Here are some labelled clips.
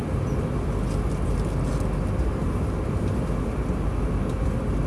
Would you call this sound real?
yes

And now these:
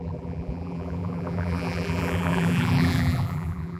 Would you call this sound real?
no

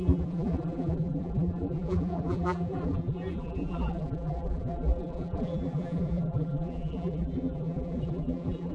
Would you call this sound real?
no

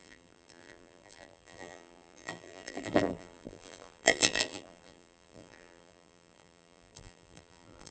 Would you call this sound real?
no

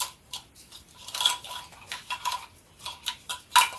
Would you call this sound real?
yes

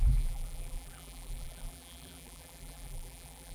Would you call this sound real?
no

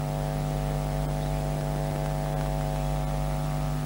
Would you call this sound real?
yes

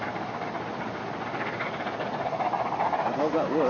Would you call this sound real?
yes